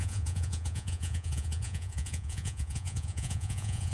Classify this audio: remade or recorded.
remade